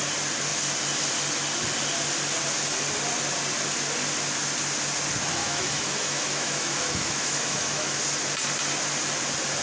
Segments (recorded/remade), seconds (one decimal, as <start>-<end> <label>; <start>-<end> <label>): 0.0-5.4 recorded; 5.4-8.0 remade; 8.0-9.6 recorded